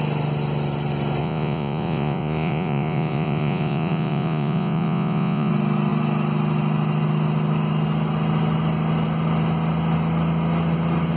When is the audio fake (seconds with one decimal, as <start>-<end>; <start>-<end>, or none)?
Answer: 1.2-5.5